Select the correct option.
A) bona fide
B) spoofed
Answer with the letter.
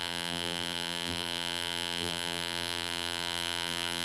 B